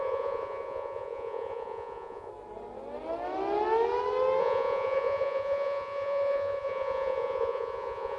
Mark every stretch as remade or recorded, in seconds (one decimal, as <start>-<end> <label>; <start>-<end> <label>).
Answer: 0.0-2.3 remade; 2.3-4.4 recorded; 4.4-8.2 remade